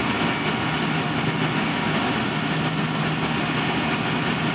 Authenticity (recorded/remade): recorded